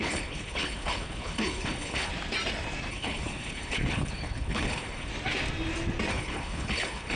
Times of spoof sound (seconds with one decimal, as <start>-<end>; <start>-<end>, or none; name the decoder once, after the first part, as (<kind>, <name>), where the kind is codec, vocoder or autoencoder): 0.0-2.1 (codec, HILCodec); 2.9-5.1; 6.1-7.2